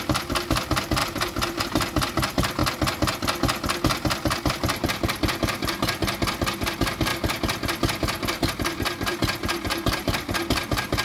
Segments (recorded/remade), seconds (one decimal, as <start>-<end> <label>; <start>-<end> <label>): 0.0-2.6 remade; 2.6-4.5 recorded; 4.5-11.0 remade